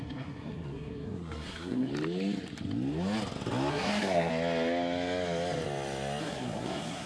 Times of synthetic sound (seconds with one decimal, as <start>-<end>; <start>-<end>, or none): 0.0-1.9; 3.7-4.3; 6.2-7.1